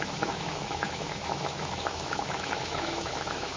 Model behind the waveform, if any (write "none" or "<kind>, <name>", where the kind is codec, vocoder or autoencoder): autoencoder, DAC-VAE